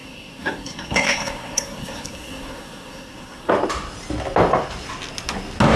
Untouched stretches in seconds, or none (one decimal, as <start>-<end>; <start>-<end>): 3.5-5.8